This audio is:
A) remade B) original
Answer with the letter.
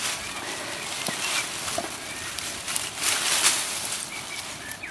A